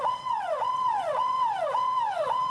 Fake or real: fake